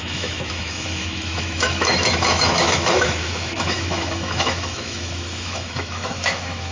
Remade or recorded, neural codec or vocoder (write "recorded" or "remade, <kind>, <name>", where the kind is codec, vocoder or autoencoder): remade, autoencoder, DAC-VAE